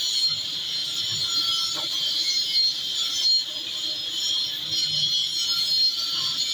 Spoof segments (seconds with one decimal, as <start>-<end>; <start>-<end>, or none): none